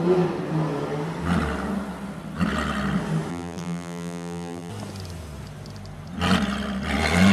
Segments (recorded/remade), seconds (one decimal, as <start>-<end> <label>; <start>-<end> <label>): 0.0-3.3 recorded; 3.3-4.7 remade; 4.7-7.3 recorded